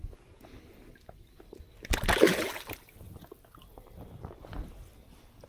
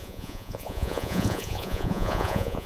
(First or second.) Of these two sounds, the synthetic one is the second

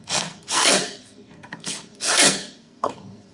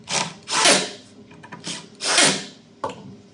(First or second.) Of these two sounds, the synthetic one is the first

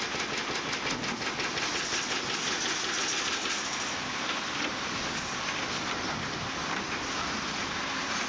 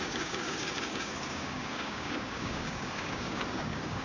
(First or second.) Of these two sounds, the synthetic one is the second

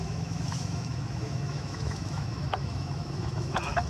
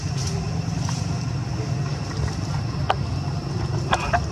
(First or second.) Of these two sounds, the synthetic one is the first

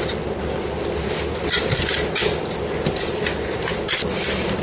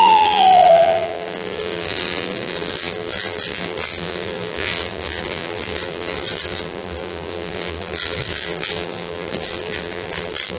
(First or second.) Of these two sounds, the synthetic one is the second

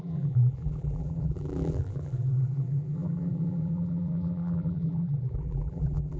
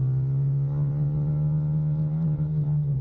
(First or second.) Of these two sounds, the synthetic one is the first